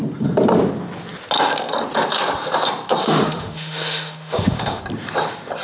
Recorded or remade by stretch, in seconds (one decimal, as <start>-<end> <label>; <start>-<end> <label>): 0.0-3.0 recorded; 3.0-4.8 remade; 4.8-5.6 recorded